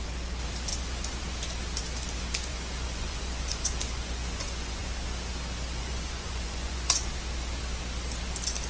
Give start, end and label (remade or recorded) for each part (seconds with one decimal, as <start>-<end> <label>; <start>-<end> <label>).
0.0-2.5 recorded; 2.5-4.9 remade; 4.9-5.8 recorded; 5.8-7.1 remade; 7.1-8.7 recorded

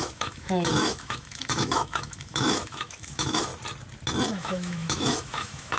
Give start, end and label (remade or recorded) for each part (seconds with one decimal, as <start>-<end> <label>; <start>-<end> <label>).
0.0-3.5 remade; 3.5-4.3 recorded; 4.3-5.8 remade

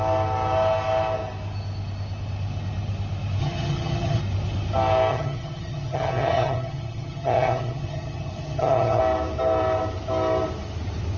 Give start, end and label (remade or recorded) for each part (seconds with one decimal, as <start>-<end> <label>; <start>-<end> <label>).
0.0-3.4 recorded; 3.4-4.2 remade; 4.2-5.1 recorded; 5.1-9.0 remade; 9.0-11.2 recorded